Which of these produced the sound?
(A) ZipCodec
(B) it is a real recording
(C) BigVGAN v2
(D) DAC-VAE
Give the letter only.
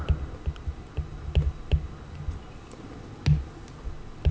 B